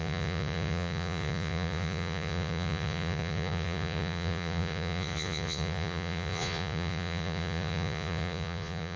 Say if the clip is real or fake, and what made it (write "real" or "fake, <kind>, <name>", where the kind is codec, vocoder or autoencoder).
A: fake, vocoder, Vocos